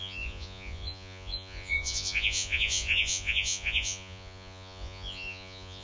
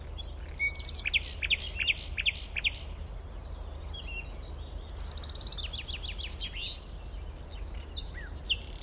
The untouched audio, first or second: second